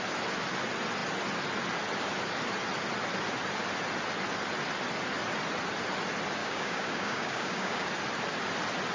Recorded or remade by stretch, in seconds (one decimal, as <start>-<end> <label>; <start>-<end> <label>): 0.0-6.4 recorded; 6.4-7.9 remade; 7.9-8.9 recorded